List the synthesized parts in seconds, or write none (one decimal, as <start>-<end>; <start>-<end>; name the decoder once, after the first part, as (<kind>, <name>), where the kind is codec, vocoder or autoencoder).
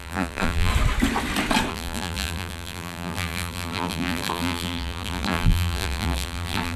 0.0-0.7 (vocoder, BigVGAN v2); 1.7-6.8